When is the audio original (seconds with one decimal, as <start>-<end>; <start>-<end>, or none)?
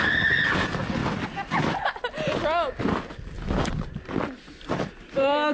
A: 0.0-5.5